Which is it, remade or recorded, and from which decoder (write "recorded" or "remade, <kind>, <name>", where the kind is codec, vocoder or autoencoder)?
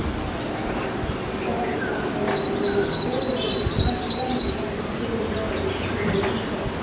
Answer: recorded